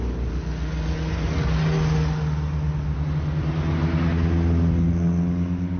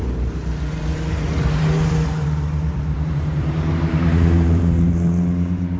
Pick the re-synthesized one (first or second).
second